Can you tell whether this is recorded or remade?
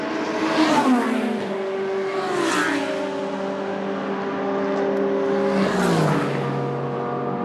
recorded